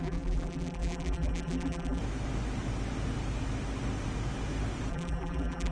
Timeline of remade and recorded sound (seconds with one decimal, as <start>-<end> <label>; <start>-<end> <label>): 0.0-2.0 remade; 2.0-4.9 recorded; 4.9-5.7 remade